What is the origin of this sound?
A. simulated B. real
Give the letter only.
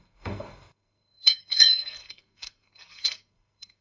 A